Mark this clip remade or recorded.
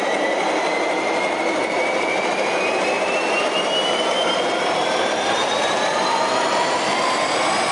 remade